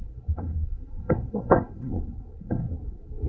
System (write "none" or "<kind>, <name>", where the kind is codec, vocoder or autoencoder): codec, SNAC